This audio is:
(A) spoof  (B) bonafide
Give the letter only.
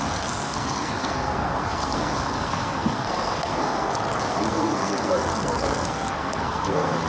A